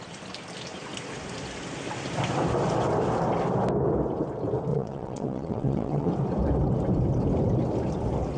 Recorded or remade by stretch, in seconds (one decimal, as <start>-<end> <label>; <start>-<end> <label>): 0.0-4.7 recorded; 4.7-6.1 remade; 6.1-8.4 recorded